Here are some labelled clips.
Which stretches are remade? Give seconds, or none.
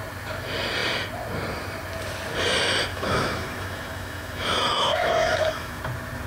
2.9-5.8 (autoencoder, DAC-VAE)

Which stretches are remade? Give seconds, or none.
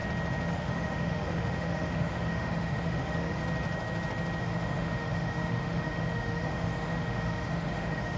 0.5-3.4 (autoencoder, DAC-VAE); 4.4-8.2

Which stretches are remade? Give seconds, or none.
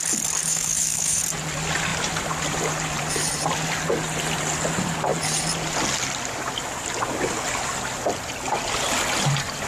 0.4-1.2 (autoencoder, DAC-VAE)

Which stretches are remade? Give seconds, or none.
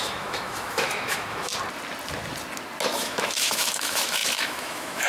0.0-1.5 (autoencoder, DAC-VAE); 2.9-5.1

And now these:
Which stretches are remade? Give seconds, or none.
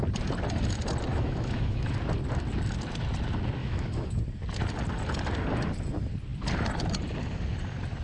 1.1-1.9 (autoencoder, DAC-VAE); 3.6-4.2